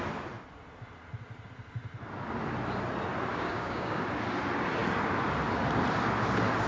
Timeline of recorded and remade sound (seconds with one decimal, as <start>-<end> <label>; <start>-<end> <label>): 0.0-3.3 recorded; 3.3-4.0 remade; 4.0-6.7 recorded